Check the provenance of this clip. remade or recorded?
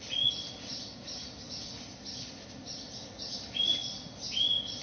recorded